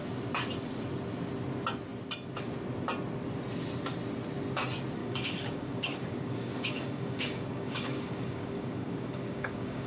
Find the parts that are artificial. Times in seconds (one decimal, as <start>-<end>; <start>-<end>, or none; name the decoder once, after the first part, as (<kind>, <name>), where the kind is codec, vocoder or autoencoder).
5.0-9.9 (codec, DAC)